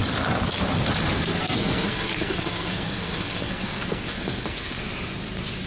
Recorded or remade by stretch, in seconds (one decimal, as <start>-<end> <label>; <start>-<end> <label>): 0.0-1.4 recorded; 1.4-4.8 remade; 4.8-5.7 recorded